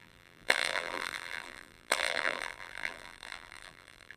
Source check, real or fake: fake